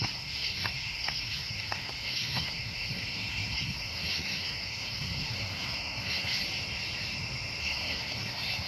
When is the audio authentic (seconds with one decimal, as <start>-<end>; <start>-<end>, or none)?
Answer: 6.4-7.6